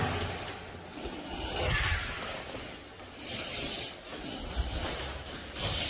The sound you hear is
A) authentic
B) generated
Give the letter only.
A